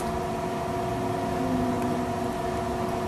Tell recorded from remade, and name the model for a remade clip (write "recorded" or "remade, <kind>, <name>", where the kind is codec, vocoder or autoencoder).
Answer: recorded